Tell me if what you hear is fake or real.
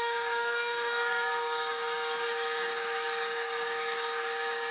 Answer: fake